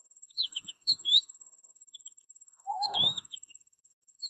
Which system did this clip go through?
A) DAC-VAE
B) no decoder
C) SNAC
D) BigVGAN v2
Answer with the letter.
A